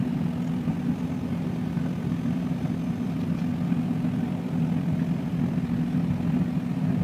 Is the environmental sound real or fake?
real